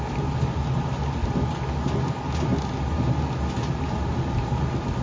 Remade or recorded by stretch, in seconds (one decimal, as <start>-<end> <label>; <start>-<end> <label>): 0.0-5.0 recorded